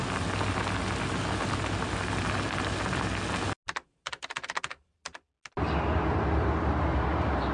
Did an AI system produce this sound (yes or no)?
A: no